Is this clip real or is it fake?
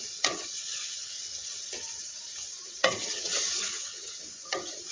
fake